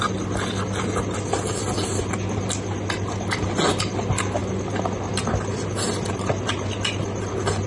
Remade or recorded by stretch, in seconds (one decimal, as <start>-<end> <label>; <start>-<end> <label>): 0.0-7.7 recorded